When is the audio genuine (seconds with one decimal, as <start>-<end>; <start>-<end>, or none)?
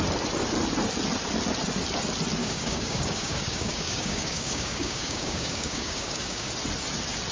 0.0-2.4; 6.5-7.3